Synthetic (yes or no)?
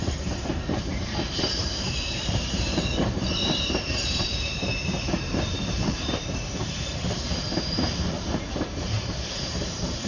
yes